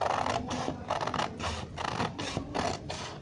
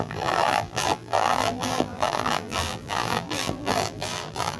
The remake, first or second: second